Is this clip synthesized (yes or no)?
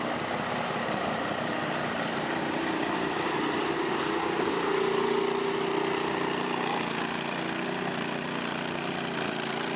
no